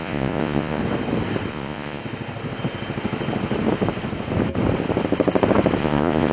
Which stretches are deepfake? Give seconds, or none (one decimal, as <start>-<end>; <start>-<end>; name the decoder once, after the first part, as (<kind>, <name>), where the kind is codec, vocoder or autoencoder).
0.0-0.8 (vocoder, Vocos); 1.5-2.0; 5.8-6.3